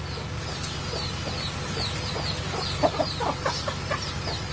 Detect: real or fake real